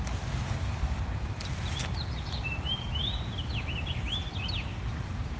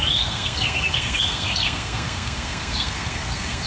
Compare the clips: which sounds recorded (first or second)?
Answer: first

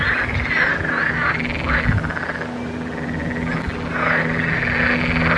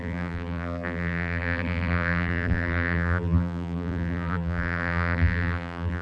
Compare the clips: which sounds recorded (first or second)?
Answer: first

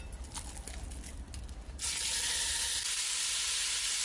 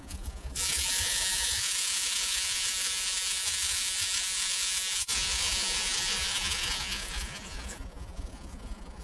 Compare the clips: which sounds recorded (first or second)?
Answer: first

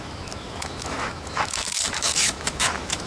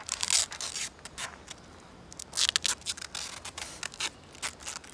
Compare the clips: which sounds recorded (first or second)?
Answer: second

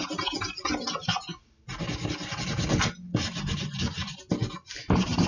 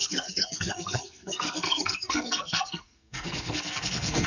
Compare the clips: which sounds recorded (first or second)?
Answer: first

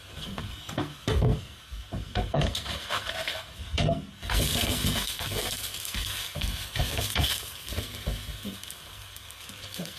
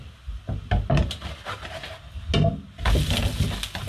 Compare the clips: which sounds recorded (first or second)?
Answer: second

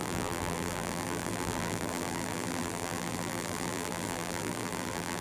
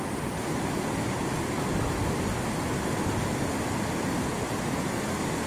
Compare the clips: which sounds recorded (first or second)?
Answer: second